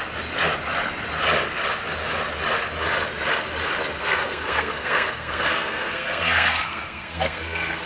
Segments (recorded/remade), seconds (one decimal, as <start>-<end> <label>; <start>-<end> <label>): 0.0-4.0 recorded; 4.0-7.9 remade